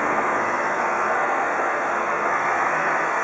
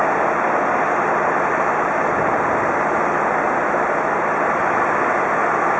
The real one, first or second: second